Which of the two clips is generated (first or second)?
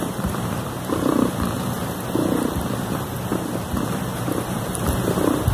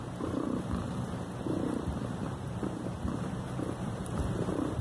second